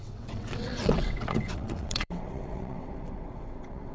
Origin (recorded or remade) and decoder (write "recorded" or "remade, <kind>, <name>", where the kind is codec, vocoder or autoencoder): remade, vocoder, WaveNeXt